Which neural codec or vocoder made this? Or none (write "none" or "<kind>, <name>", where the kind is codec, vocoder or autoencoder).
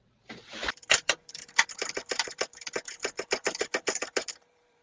vocoder, BigVGAN v2